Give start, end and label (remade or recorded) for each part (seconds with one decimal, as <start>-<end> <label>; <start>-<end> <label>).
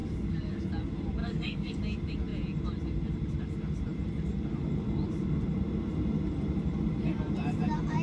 0.0-0.7 remade; 0.7-1.2 recorded; 1.2-1.8 remade; 1.8-8.0 recorded